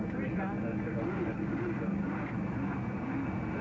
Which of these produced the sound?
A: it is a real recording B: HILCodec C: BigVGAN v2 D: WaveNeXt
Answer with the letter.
A